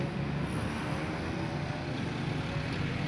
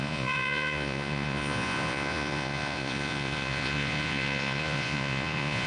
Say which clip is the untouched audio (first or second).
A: first